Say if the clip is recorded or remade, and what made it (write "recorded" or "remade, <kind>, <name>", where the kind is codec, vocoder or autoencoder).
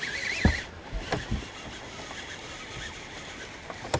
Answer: recorded